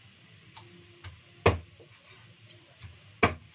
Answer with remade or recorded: recorded